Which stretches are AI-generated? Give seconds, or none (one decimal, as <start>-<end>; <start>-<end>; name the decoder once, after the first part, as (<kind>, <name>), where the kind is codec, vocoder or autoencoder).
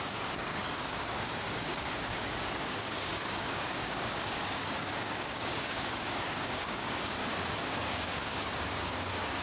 0.0-7.2 (codec, DAC); 7.9-9.4